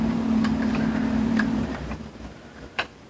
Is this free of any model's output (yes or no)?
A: no